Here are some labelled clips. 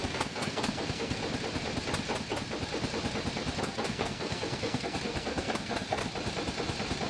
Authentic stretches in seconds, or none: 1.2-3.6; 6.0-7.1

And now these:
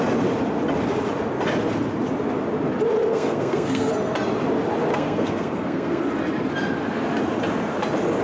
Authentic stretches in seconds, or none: 0.0-3.1; 3.9-4.9; 6.0-8.2

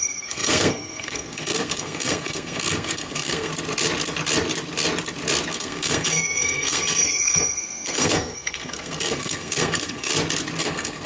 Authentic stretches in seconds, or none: 3.5-5.5; 10.1-10.6

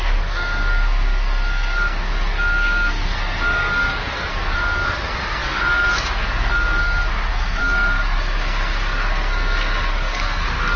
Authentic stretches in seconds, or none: none

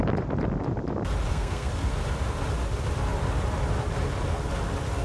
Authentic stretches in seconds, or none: 0.0-1.3; 1.9-5.0

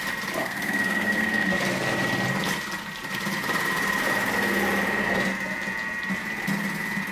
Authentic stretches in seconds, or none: 0.0-0.4; 1.6-7.1

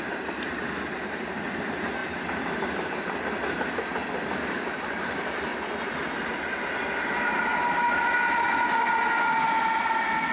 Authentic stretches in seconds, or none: 0.0-10.3

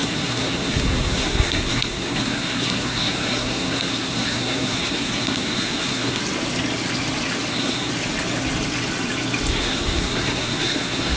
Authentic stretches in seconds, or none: 6.2-7.5; 7.9-9.5